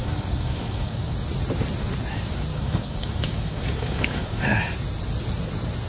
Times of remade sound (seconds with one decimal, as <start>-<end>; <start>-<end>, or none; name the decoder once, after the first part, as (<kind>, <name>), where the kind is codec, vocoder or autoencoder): 0.0-1.1 (codec, DAC); 2.5-4.6